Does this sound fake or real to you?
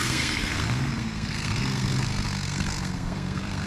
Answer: fake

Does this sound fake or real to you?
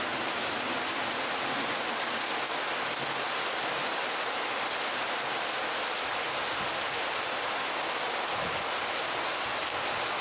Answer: real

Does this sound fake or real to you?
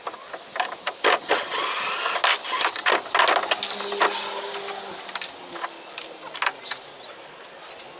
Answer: real